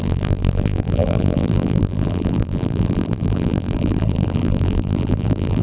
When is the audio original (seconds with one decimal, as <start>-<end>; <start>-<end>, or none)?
none